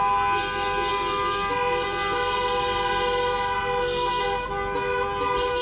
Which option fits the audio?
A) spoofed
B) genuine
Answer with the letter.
B